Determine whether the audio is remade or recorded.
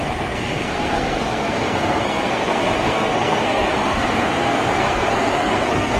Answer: remade